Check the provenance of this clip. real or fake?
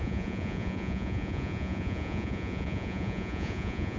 fake